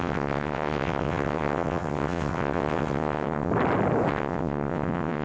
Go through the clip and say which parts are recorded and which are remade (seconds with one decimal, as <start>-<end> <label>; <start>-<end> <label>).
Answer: 0.0-3.5 remade; 3.5-4.1 recorded; 4.1-5.2 remade